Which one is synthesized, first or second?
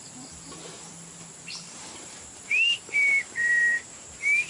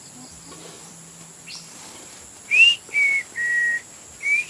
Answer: first